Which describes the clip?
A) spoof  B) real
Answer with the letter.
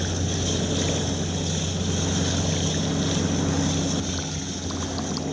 B